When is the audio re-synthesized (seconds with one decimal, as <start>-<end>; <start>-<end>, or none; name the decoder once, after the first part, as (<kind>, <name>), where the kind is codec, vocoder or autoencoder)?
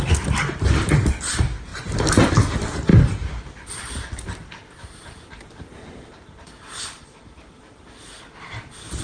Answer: none